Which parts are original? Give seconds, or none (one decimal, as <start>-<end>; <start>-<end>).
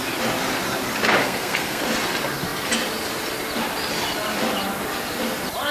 0.0-1.2; 1.8-5.7